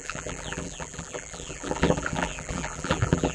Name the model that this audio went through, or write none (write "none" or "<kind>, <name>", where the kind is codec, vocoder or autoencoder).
vocoder, BigVGAN v2